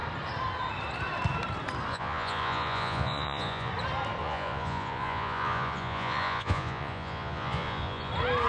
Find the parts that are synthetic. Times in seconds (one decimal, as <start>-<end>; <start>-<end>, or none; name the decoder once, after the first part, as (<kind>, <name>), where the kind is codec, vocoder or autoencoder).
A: 1.9-3.7 (vocoder, Vocos); 4.2-8.1